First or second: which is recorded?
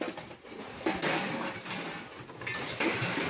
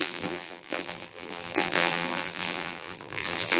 first